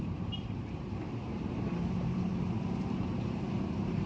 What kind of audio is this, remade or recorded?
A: remade